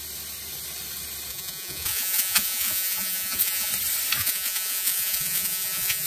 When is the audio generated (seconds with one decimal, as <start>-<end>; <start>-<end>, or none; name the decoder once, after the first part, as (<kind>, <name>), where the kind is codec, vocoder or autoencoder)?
1.3-3.7 (vocoder, Vocos); 4.2-6.1